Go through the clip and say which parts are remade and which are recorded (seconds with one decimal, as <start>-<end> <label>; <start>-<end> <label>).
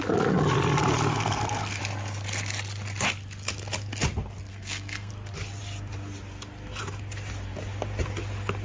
0.0-1.1 recorded; 1.1-1.8 remade; 1.8-4.5 recorded; 4.5-5.1 remade; 5.1-8.6 recorded